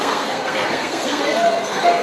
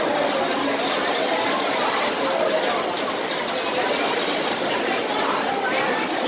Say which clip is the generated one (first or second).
first